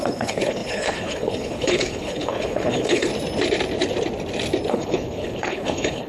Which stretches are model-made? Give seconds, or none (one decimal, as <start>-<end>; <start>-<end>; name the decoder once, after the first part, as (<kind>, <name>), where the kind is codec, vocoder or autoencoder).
0.0-3.1 (codec, HILCodec); 4.7-6.1